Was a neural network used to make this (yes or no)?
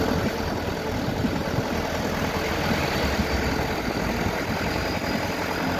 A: no